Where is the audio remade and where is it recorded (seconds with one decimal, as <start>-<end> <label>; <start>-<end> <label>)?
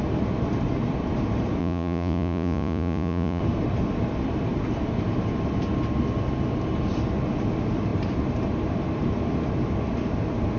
0.0-1.6 recorded; 1.6-3.4 remade; 3.4-10.6 recorded